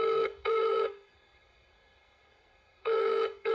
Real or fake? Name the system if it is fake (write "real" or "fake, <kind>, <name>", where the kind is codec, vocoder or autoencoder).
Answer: fake, codec, SNAC